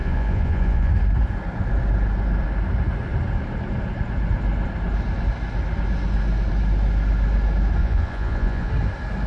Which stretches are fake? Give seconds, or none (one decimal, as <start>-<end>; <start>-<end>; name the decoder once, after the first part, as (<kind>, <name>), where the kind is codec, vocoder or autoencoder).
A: 0.0-0.9 (vocoder, Vocos); 7.8-8.7